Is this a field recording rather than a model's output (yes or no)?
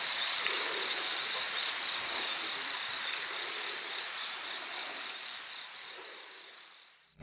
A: no